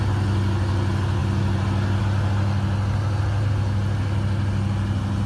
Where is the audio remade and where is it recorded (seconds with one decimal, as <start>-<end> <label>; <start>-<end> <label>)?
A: 0.0-5.3 recorded